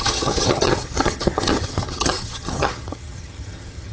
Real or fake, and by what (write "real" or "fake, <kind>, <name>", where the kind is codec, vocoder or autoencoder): fake, vocoder, HiFi-GAN